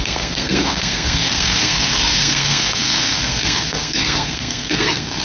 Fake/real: fake